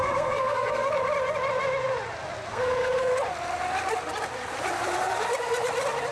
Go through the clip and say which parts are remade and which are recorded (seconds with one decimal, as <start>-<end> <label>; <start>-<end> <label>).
0.0-0.9 remade; 0.9-2.5 recorded; 2.5-3.1 remade; 3.1-6.1 recorded